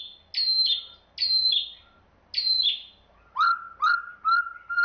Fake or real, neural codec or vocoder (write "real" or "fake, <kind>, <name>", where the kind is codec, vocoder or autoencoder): real